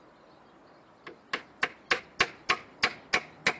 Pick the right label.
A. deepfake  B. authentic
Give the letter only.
B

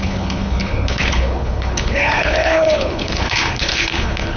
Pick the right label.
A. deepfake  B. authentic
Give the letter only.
A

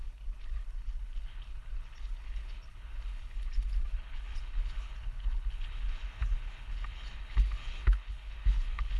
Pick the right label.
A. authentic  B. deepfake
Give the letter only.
B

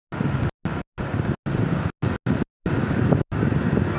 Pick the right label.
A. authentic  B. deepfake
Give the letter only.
A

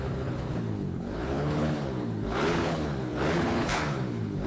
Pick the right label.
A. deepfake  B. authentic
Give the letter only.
A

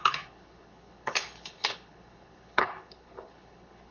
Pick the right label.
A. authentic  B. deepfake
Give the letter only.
B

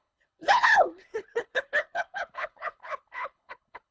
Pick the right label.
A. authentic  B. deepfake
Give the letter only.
B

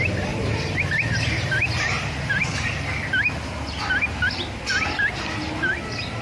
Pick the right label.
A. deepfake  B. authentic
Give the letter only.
B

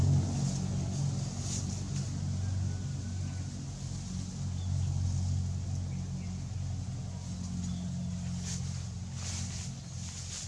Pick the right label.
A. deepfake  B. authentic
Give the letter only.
B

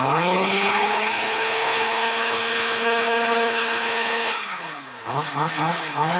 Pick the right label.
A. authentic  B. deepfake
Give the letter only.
B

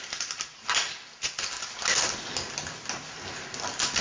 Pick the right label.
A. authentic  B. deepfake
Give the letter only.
A